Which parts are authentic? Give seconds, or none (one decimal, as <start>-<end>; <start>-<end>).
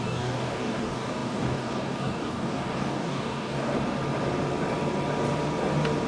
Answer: 3.7-6.1